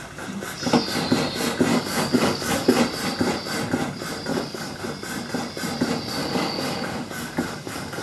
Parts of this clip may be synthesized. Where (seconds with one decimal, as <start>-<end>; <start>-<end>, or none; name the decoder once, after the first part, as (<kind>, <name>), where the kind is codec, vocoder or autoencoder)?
1.7-2.8 (codec, DAC); 4.3-4.8; 6.2-8.0